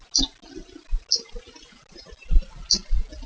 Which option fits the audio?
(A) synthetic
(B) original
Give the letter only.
B